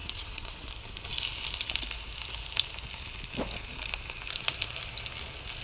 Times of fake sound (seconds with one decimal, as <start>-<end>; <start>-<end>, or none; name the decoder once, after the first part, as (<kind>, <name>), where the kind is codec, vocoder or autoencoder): 0.0-0.7 (vocoder, WaveNeXt)